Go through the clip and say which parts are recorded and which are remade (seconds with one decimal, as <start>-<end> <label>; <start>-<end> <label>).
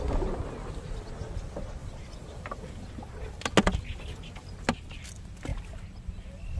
0.0-1.8 recorded; 1.8-2.7 remade; 2.7-6.6 recorded